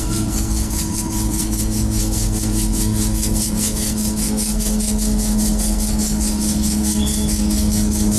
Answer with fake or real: fake